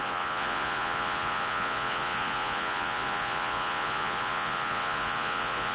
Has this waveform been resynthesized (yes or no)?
yes